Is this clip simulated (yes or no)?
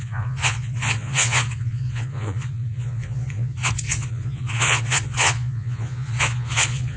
yes